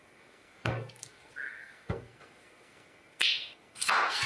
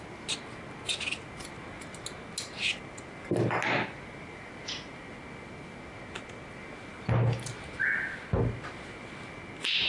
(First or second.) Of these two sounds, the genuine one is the second